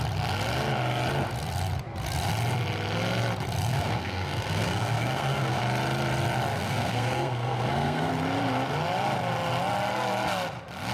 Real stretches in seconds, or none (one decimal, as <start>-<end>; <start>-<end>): 0.0-3.7; 5.6-6.5; 8.1-10.9